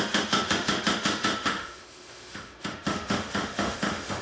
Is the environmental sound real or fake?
fake